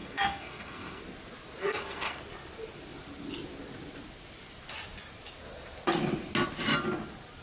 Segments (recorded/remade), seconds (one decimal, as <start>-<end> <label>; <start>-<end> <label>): 0.0-1.0 remade; 1.0-1.6 recorded; 1.6-2.2 remade; 2.2-7.4 recorded